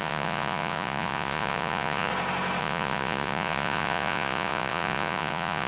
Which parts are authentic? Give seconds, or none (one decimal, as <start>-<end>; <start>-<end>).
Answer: 2.1-2.6